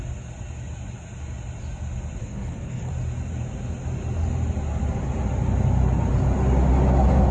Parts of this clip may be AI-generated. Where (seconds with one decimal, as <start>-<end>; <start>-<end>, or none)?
2.2-2.9